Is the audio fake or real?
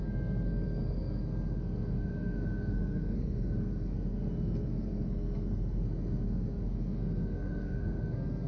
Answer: fake